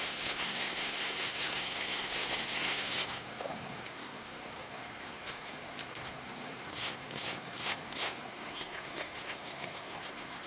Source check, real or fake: fake